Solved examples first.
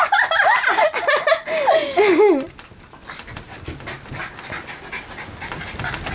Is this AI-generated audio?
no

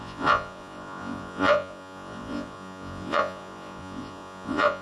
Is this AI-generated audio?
yes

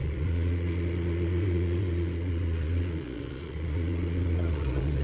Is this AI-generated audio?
yes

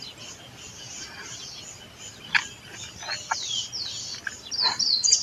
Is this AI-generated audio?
no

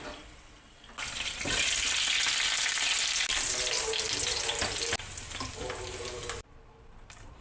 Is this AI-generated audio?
no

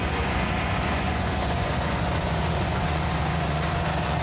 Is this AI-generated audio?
yes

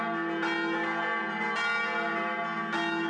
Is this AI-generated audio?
no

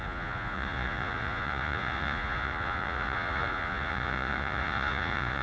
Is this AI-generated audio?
yes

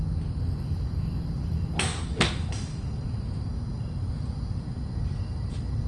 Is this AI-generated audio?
no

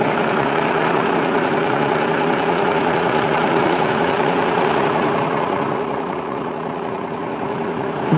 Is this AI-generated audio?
yes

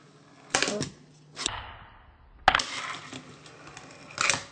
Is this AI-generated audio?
no